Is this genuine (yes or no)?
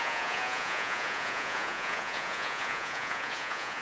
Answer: no